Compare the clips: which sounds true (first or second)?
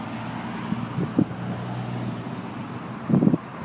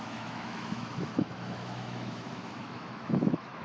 first